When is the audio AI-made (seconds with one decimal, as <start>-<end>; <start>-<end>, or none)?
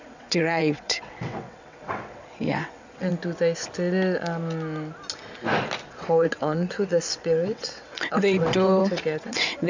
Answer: 0.0-3.1; 5.9-9.7